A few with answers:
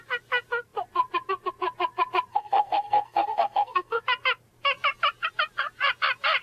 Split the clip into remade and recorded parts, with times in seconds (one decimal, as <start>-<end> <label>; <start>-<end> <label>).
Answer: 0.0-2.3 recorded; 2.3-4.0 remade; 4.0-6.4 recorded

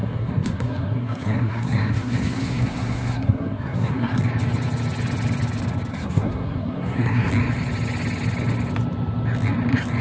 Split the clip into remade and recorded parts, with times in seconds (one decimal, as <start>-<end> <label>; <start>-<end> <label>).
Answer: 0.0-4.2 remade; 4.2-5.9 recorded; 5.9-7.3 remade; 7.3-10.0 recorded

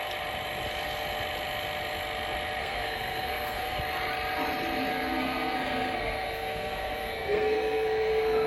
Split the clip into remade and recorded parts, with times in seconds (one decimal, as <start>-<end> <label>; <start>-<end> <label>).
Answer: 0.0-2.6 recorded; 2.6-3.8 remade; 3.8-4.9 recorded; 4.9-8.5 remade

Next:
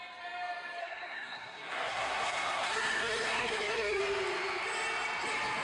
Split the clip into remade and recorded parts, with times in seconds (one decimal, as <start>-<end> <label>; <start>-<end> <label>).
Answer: 0.0-0.8 recorded; 0.8-4.0 remade; 4.0-5.6 recorded